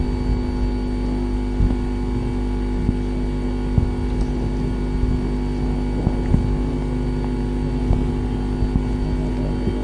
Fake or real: real